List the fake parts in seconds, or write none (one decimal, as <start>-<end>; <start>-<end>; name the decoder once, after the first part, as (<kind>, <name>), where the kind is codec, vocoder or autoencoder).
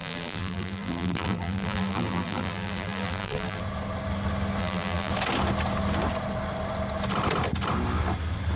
0.0-3.6 (vocoder, BigVGAN v2); 4.6-5.1